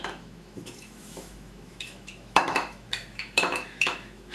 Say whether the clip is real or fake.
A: fake